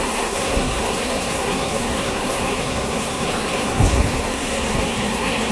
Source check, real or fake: fake